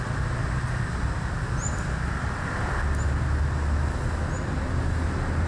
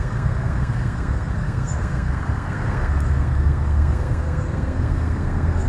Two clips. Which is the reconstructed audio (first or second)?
second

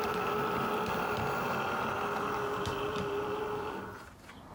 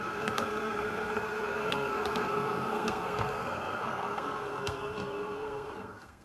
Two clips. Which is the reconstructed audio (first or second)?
second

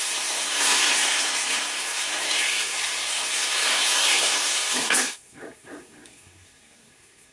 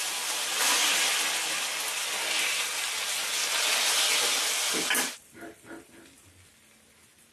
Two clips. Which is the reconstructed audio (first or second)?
first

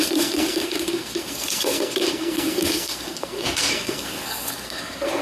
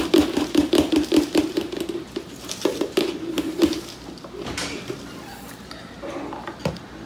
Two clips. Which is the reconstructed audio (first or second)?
first